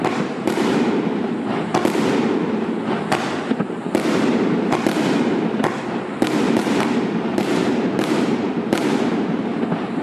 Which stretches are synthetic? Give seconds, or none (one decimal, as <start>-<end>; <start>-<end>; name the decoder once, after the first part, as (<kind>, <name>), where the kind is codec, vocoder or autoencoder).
0.0-1.7 (vocoder, BigVGAN v2); 6.4-10.0